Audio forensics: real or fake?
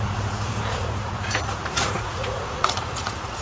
fake